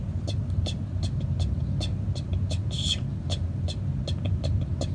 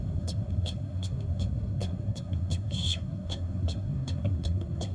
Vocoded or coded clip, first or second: second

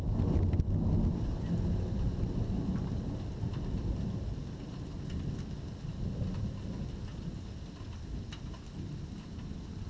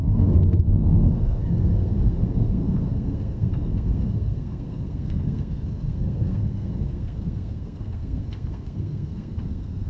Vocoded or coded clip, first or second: second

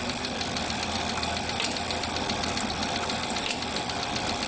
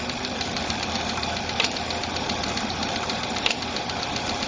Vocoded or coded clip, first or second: second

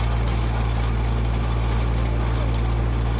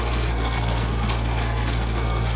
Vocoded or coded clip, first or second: second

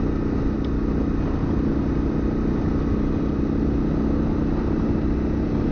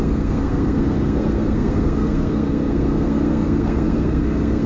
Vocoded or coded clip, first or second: second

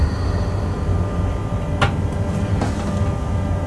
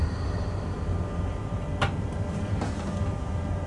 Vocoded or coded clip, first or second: second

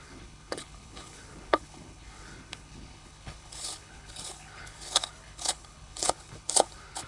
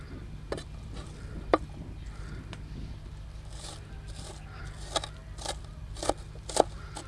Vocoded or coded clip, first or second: first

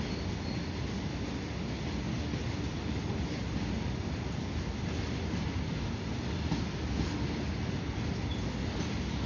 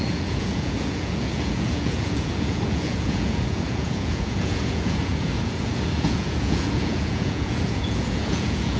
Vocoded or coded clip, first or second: second